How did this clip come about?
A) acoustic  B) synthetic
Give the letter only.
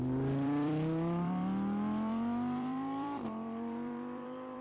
B